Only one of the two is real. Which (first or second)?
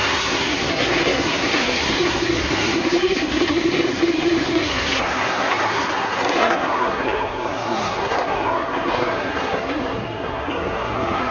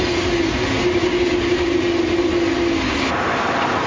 second